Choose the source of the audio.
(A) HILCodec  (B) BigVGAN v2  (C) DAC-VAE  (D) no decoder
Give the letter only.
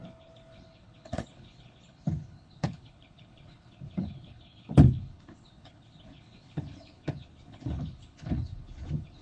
A